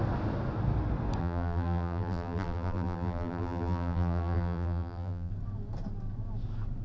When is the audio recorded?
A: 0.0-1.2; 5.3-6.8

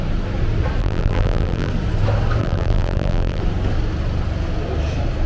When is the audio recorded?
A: 0.0-0.8; 1.7-2.4; 3.4-5.3

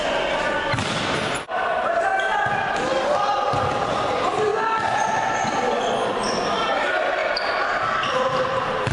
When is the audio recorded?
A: 2.1-2.6; 4.5-6.4

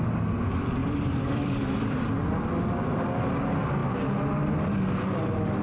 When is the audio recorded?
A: 0.0-0.8; 2.1-5.6

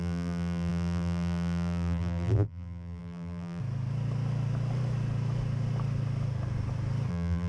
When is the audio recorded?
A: 3.6-7.1

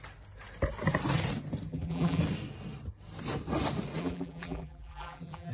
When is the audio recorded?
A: 0.0-1.7; 2.2-4.0